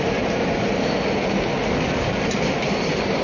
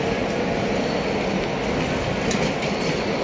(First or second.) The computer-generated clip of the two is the first